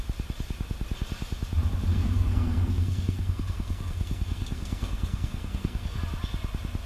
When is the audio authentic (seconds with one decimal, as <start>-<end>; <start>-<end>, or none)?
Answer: 0.0-1.9; 6.0-6.9

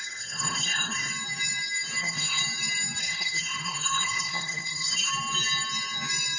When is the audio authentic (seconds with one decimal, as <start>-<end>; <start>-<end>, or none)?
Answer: 1.1-2.0; 2.4-3.0; 5.1-6.4

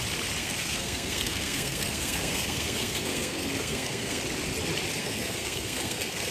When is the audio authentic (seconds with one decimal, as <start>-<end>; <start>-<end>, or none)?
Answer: 0.0-0.4; 4.2-5.0

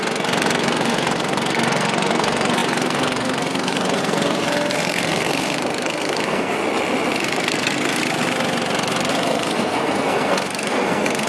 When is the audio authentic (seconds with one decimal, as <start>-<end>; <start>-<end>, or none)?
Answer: 6.6-7.2; 8.0-9.1